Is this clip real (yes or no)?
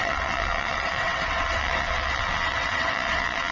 no